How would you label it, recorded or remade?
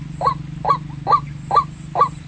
recorded